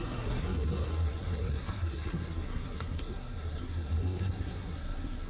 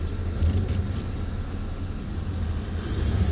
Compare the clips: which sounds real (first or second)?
second